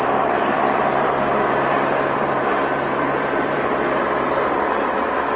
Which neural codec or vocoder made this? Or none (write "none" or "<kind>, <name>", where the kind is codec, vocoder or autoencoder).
vocoder, BigVGAN v2